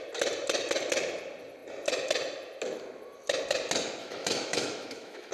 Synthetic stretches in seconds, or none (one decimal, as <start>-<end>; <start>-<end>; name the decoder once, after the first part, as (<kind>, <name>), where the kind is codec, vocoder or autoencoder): 4.0-5.3 (autoencoder, DAC-VAE)